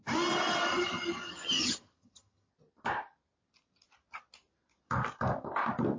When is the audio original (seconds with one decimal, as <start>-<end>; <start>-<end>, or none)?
0.0-0.7; 2.5-6.0